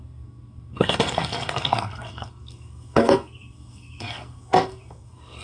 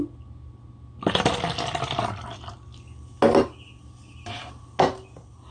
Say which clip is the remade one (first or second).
first